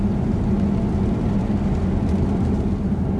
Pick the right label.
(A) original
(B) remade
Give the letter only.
A